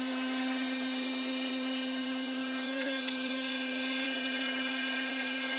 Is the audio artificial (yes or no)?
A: yes